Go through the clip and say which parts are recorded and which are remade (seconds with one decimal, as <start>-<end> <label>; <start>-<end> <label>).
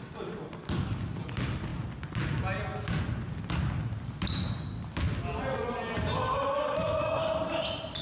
0.0-8.0 recorded